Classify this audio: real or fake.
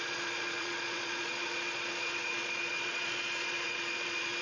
fake